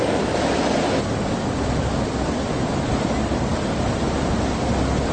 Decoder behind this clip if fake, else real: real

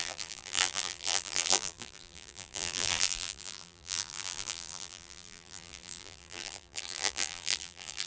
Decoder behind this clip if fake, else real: fake, vocoder, BigVGAN v2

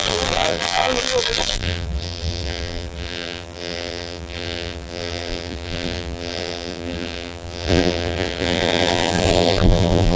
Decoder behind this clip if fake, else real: fake, vocoder, BigVGAN v2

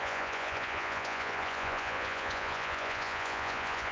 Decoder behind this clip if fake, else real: fake, vocoder, Vocos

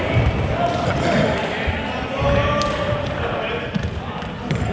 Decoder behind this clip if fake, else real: real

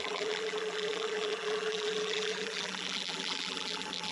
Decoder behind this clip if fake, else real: fake, vocoder, BigVGAN v2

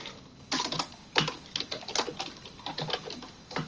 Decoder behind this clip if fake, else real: real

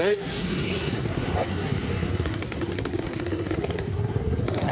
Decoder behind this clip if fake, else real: fake, codec, SNAC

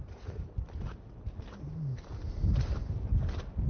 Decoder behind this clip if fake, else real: real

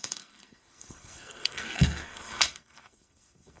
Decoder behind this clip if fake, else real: fake, codec, SNAC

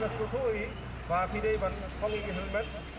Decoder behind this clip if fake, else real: real